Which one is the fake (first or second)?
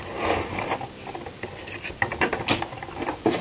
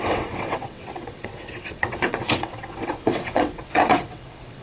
second